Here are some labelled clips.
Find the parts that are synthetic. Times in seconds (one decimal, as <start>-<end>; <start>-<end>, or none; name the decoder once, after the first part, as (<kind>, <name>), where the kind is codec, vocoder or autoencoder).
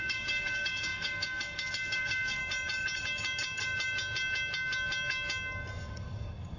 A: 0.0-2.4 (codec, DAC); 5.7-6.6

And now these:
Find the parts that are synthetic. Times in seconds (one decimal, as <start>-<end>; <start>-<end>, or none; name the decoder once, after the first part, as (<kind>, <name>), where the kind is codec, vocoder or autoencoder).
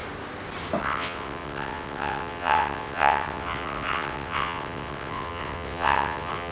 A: 0.8-6.5 (vocoder, WaveNeXt)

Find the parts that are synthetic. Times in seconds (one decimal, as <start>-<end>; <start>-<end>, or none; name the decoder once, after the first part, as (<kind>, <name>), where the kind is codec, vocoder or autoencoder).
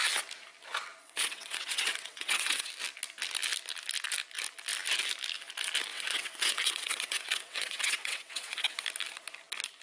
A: 1.0-2.7 (vocoder, WaveNeXt); 5.9-8.8